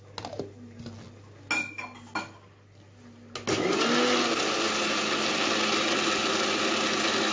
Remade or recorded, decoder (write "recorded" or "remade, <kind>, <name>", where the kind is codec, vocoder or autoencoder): recorded